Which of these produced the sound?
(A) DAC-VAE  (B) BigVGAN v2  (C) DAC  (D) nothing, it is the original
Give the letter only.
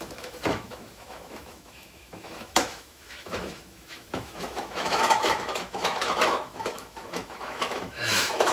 A